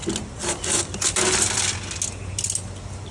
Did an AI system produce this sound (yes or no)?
no